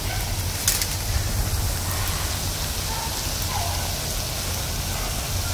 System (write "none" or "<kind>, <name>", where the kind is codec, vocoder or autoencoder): none